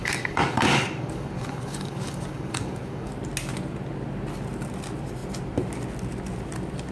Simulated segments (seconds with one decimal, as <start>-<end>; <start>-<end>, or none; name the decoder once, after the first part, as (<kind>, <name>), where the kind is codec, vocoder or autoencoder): 0.0-3.1 (codec, DAC)